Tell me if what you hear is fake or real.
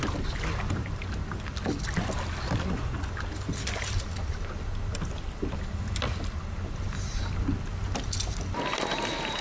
real